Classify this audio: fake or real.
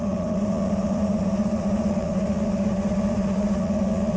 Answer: fake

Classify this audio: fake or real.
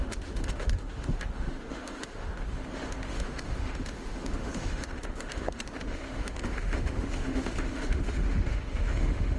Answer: fake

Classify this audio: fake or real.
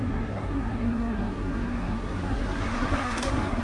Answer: fake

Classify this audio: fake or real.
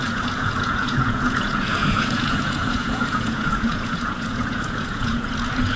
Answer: fake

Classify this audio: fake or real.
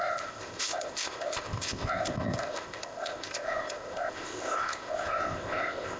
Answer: fake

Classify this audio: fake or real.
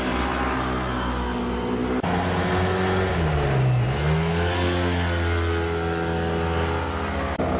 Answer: real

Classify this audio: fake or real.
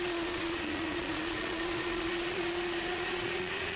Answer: fake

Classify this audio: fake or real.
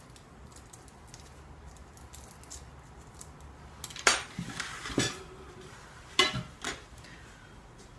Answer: real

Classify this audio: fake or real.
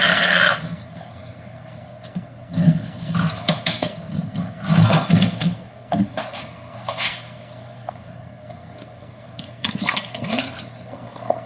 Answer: fake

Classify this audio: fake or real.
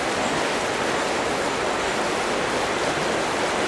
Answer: real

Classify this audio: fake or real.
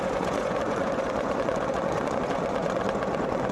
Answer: fake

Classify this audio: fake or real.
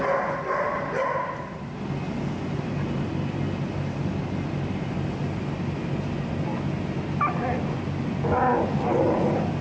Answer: real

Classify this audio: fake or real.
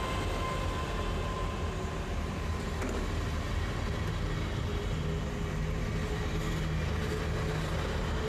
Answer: real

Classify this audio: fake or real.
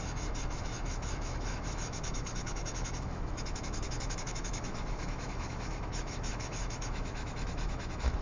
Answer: fake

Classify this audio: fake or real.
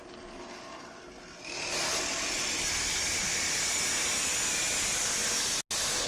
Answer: real